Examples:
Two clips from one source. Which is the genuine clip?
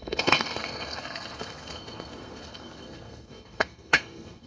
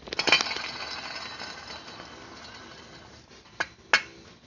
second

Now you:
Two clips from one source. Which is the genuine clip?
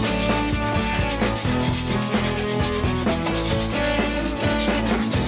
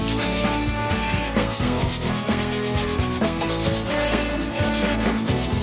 first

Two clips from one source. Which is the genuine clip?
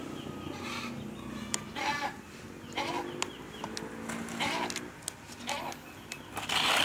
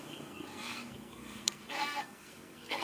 first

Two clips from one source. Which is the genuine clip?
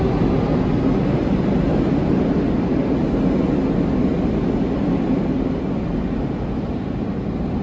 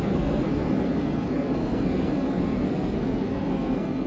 first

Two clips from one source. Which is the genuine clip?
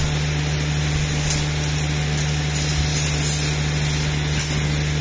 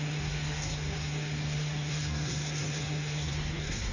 first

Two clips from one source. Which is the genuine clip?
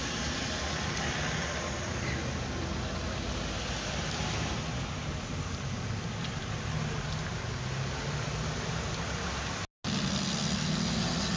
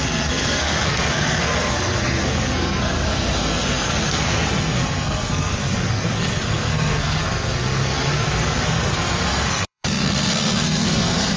first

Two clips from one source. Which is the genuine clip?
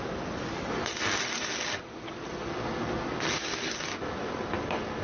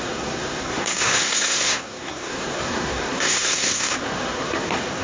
first